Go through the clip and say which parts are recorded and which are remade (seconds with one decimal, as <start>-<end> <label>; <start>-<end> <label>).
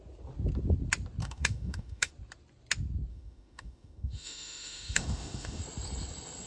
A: 0.0-1.2 recorded; 1.2-2.1 remade; 2.1-3.1 recorded; 3.1-5.6 remade; 5.6-6.5 recorded